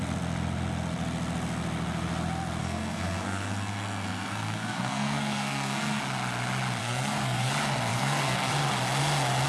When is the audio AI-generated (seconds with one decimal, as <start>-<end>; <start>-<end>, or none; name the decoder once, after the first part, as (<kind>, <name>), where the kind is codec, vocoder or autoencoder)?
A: 2.6-6.0 (codec, SNAC); 6.8-7.5; 7.9-8.5